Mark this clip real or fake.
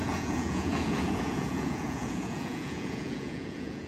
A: fake